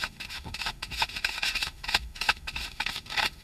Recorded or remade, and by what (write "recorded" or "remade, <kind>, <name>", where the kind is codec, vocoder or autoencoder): remade, autoencoder, DAC-VAE